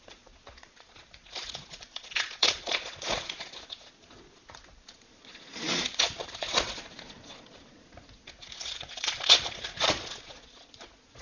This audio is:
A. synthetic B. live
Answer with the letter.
A